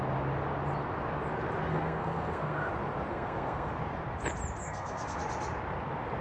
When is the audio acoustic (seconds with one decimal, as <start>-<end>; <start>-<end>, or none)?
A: 0.0-1.7; 2.7-3.1; 3.7-4.6; 5.2-6.2